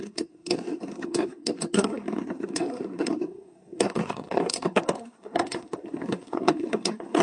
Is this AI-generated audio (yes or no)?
yes